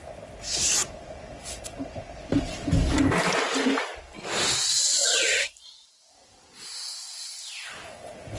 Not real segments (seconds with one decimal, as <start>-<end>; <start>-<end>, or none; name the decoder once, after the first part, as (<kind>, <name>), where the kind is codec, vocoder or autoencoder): none